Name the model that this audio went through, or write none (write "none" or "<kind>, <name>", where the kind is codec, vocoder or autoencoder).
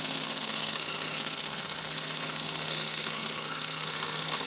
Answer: codec, SNAC